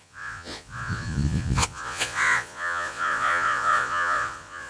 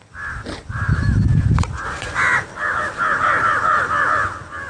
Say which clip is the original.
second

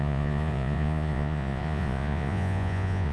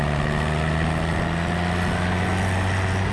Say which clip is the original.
second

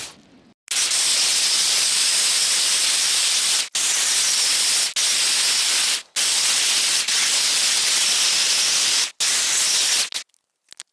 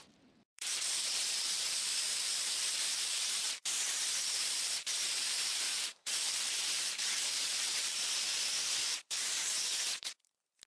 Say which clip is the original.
first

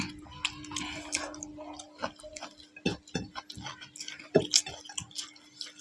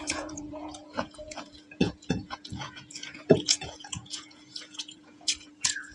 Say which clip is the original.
first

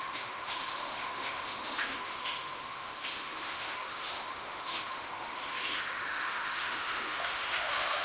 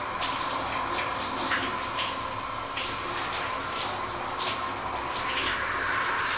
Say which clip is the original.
second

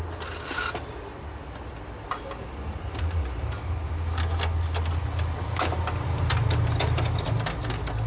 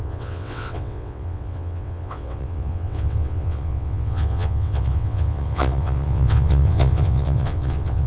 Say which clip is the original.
first